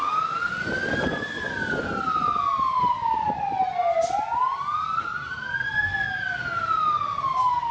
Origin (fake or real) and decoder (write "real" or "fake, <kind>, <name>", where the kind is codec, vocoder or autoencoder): real